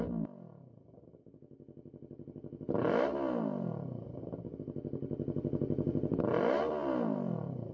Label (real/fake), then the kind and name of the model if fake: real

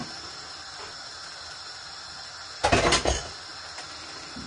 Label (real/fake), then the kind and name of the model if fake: real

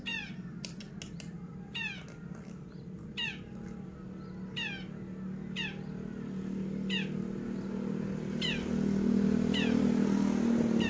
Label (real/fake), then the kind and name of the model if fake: real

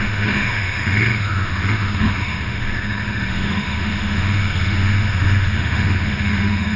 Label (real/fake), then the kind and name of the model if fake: fake, autoencoder, DAC-VAE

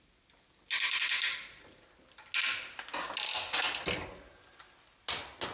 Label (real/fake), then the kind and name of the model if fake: real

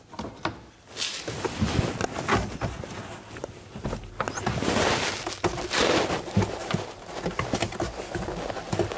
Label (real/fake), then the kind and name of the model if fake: real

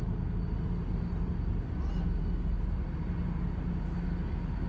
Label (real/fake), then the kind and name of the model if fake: real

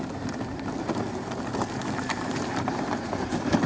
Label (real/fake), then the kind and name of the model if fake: real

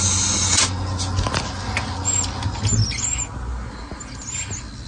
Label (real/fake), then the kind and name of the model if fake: real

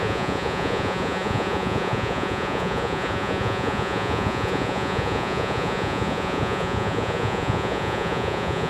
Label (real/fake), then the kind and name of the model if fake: fake, vocoder, Vocos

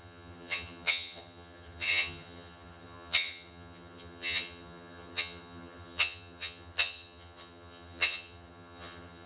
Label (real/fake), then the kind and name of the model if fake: fake, vocoder, HiFi-GAN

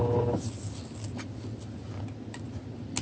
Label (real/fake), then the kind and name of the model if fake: real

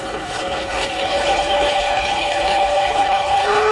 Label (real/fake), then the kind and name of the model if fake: fake, codec, HILCodec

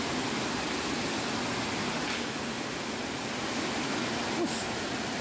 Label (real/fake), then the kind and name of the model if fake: real